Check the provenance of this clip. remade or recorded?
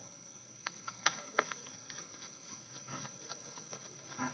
remade